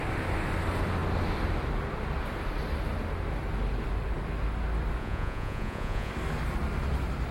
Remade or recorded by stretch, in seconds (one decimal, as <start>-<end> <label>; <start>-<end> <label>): 0.0-5.0 recorded; 5.0-6.1 remade; 6.1-7.3 recorded